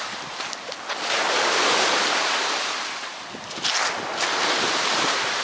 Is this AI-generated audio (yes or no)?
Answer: no